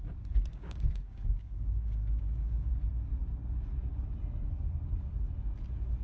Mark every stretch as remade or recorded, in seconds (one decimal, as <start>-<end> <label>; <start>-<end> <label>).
0.0-0.5 recorded; 0.5-2.7 remade; 2.7-6.0 recorded

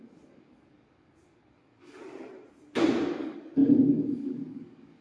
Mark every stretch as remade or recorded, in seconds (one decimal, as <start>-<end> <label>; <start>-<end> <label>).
0.0-2.0 remade; 2.0-3.1 recorded; 3.1-5.0 remade